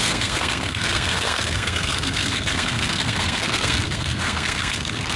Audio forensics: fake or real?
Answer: fake